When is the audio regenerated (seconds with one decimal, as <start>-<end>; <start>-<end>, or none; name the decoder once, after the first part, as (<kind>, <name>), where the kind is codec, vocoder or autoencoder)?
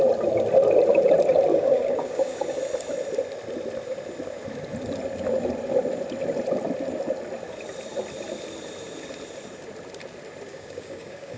1.5-2.6 (codec, DAC); 10.5-11.4